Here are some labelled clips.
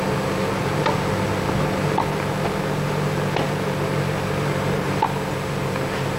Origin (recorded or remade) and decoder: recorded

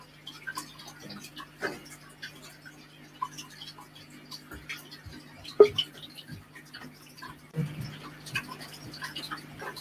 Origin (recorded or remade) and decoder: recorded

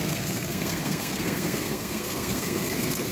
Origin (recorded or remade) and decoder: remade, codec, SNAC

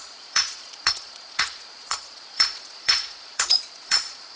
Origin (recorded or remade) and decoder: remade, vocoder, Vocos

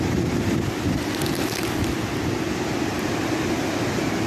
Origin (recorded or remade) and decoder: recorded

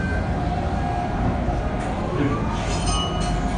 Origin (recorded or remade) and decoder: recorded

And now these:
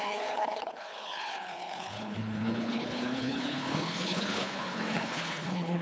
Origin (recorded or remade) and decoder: remade, codec, HILCodec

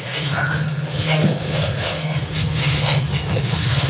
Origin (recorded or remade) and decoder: remade, autoencoder, DAC-VAE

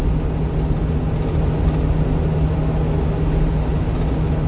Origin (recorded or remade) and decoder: recorded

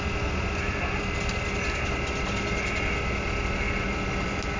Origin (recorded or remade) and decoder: recorded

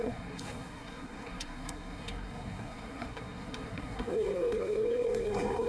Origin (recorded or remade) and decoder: remade, codec, SNAC